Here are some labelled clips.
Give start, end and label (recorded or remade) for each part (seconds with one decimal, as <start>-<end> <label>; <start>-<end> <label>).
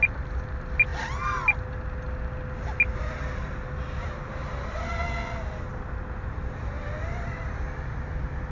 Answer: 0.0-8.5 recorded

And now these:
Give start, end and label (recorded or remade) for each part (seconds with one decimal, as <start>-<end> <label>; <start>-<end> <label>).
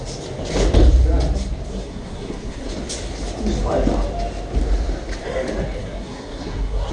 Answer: 0.0-1.7 recorded; 1.7-2.7 remade; 2.7-5.8 recorded; 5.8-6.9 remade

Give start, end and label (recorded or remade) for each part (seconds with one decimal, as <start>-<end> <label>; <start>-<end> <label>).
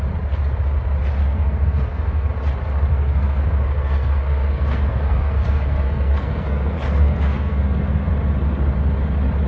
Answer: 0.0-1.2 recorded; 1.2-2.3 remade; 2.3-2.9 recorded; 2.9-8.1 remade; 8.1-9.5 recorded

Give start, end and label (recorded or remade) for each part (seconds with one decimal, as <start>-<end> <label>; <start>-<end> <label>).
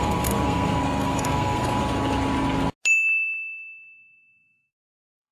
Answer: 0.0-1.8 remade; 1.8-4.7 recorded; 4.7-5.3 remade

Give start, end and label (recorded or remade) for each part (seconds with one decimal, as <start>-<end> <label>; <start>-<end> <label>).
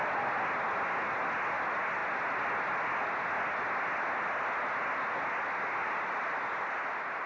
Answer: 0.0-7.3 recorded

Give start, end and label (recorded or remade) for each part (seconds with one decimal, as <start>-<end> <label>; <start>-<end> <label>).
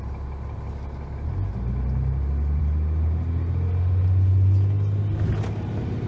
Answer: 0.0-6.1 recorded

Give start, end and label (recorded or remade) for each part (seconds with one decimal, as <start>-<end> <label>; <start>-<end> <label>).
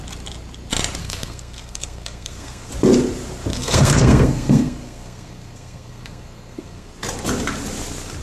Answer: 0.0-1.0 recorded; 1.0-2.7 remade; 2.7-3.5 recorded; 3.5-6.9 remade; 6.9-8.2 recorded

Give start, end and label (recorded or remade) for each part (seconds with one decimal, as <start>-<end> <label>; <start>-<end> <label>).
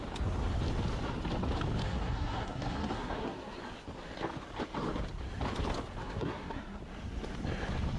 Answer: 0.0-1.8 recorded; 1.8-3.6 remade; 3.6-6.0 recorded; 6.0-6.8 remade; 6.8-8.0 recorded